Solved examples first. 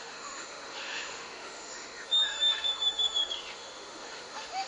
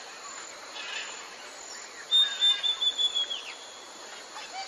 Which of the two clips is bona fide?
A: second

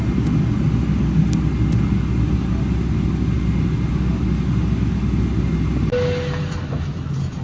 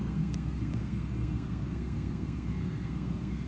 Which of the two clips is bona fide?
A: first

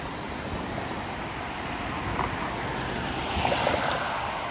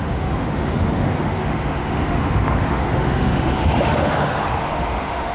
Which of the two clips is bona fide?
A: first